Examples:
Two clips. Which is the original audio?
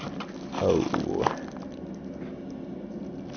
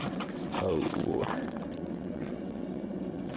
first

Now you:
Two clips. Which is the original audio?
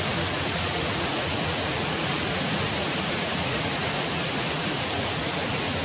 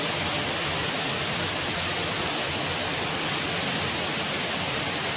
second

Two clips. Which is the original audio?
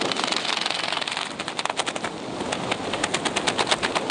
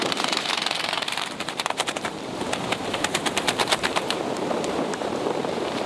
first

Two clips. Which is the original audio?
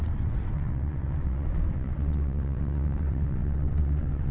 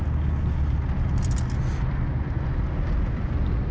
second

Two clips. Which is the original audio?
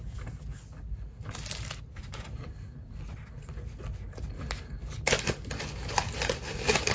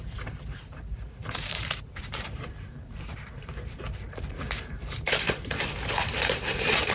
first